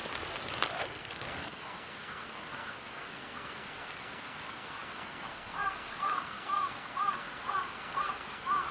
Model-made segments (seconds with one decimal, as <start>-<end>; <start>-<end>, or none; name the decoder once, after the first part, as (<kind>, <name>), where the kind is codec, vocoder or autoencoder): 0.8-8.7 (codec, SNAC)